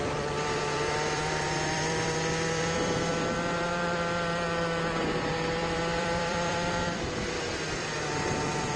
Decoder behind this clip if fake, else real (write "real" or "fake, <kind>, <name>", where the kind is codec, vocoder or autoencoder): fake, vocoder, BigVGAN v2